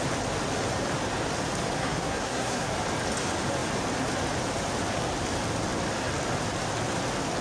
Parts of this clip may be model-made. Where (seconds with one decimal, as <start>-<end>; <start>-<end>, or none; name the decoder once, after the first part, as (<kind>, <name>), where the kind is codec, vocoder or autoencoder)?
1.8-2.7 (codec, SNAC)